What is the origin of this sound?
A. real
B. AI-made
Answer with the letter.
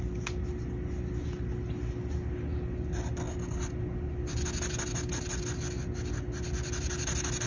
A